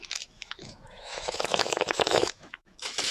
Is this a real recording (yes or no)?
no